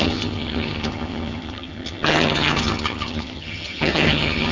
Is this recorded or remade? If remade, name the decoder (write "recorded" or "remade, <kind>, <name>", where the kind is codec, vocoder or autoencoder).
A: remade, vocoder, HiFi-GAN